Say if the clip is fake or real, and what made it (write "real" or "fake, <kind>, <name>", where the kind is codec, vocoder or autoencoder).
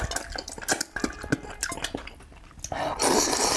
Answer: real